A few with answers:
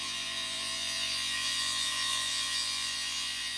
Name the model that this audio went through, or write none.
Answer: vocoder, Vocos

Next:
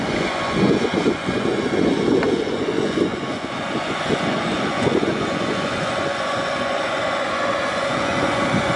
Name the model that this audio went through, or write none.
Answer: vocoder, Vocos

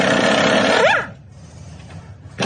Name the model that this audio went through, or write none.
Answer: none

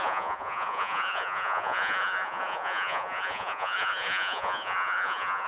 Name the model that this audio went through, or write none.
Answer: vocoder, Vocos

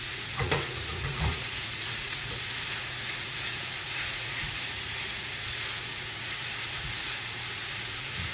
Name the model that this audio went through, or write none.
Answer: vocoder, Vocos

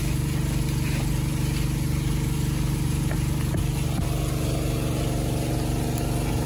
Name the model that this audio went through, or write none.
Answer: none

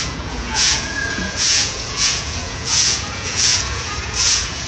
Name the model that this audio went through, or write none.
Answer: vocoder, Vocos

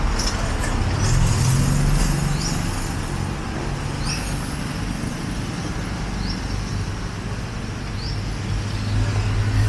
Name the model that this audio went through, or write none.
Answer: none